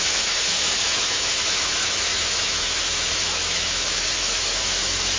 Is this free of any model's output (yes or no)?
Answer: no